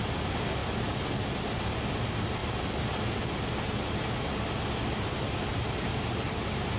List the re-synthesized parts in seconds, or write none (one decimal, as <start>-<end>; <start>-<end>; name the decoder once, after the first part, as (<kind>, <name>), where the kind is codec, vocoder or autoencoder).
2.4-3.0 (vocoder, BigVGAN v2); 5.5-6.8